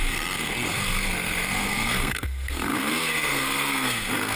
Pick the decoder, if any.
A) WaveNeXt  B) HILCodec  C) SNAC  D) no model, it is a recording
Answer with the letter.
C